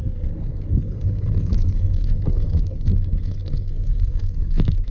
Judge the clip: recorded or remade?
remade